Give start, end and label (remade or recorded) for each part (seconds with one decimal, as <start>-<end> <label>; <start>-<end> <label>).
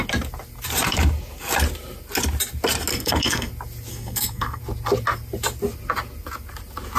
0.0-2.9 recorded; 2.9-3.5 remade; 3.5-3.9 recorded; 3.9-4.6 remade; 4.6-7.0 recorded